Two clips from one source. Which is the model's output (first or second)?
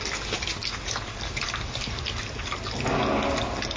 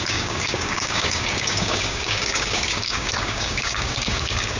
second